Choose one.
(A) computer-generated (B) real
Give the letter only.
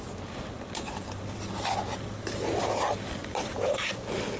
B